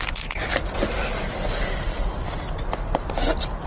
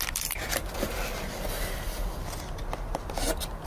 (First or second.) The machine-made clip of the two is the first